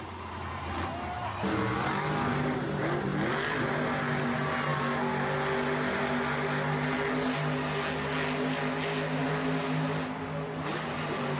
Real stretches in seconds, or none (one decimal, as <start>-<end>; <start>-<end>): 0.0-11.4